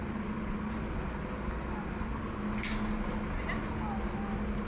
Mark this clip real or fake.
real